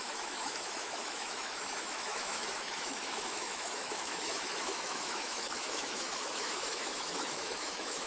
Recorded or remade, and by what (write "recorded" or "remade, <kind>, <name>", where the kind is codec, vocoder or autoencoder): remade, autoencoder, DAC-VAE